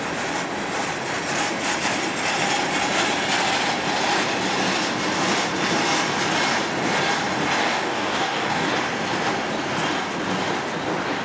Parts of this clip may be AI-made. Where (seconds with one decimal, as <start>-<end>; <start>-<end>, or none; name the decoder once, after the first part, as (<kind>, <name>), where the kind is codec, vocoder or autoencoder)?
7.6-8.7 (codec, DAC)